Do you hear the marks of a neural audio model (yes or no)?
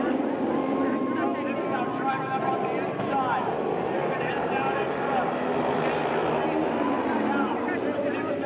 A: no